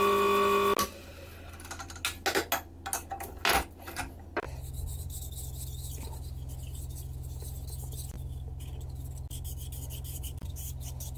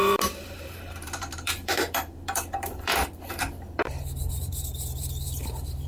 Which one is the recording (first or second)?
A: first